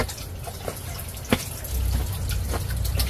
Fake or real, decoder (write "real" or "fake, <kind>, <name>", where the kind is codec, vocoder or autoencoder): real